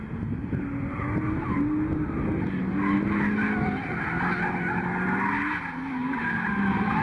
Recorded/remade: recorded